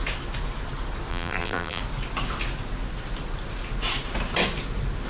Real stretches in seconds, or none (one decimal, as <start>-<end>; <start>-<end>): 0.0-1.1; 1.8-5.1